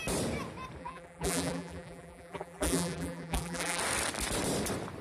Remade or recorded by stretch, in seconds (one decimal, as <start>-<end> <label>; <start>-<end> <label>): 0.0-0.8 recorded; 0.8-3.8 remade; 3.8-5.0 recorded